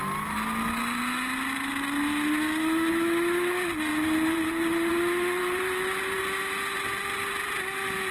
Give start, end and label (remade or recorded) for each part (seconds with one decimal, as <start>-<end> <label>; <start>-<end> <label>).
0.0-3.9 recorded; 3.9-4.9 remade; 4.9-5.4 recorded; 5.4-6.2 remade; 6.2-8.1 recorded